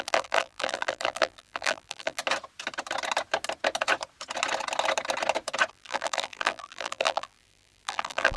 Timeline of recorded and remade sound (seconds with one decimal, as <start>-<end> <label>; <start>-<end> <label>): 0.0-2.2 remade; 2.2-5.7 recorded; 5.7-8.4 remade